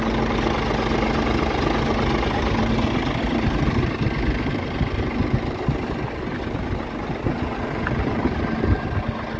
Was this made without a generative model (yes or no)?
yes